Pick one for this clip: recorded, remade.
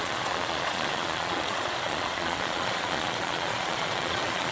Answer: remade